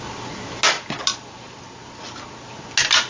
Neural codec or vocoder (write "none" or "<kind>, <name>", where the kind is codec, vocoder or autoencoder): none